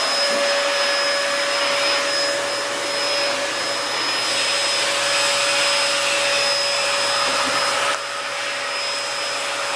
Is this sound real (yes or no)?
yes